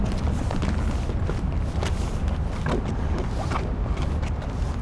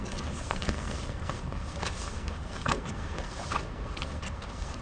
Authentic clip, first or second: first